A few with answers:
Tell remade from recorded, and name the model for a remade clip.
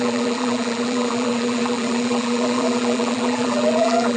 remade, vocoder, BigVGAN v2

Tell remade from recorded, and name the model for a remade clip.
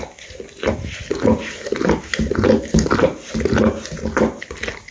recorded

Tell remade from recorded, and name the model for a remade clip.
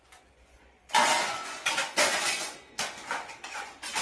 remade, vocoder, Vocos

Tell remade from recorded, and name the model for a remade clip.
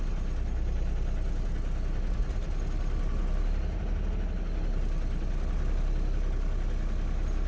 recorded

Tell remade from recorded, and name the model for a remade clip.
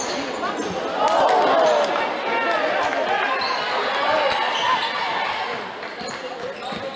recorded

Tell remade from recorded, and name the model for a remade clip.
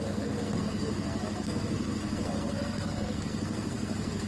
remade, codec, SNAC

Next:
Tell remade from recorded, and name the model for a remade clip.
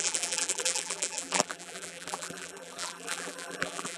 remade, vocoder, BigVGAN v2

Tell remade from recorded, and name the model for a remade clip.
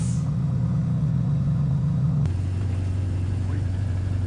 remade, vocoder, Vocos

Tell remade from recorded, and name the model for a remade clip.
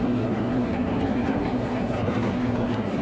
remade, codec, SNAC